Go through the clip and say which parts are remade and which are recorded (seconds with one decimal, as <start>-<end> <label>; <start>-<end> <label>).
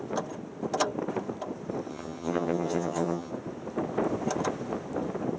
0.0-1.9 recorded; 1.9-3.3 remade; 3.3-5.4 recorded